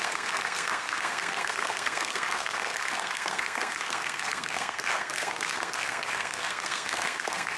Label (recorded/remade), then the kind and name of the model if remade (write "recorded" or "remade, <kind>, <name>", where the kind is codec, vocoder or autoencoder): remade, codec, SNAC